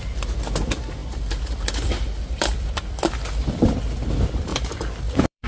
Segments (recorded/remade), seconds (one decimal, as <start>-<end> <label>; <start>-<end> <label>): 0.0-1.0 recorded; 1.0-3.1 remade; 3.1-4.5 recorded; 4.5-5.5 remade